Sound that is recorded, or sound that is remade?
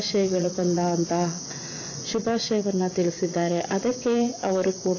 remade